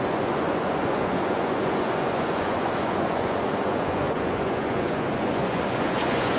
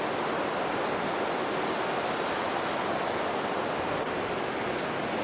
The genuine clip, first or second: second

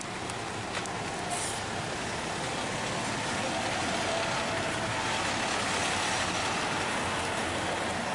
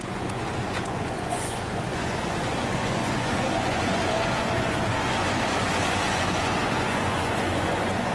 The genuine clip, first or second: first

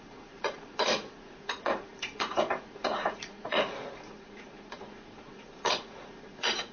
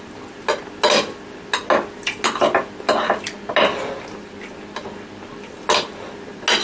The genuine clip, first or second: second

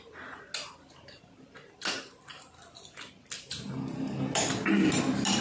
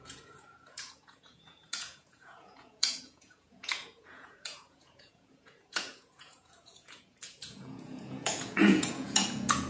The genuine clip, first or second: first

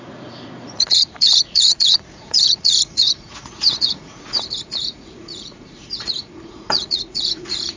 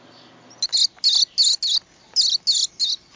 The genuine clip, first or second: second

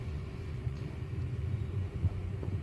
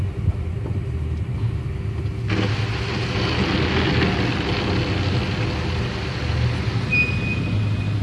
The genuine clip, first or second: second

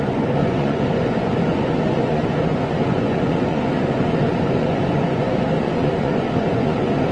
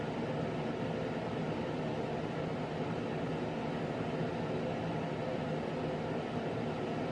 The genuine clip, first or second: second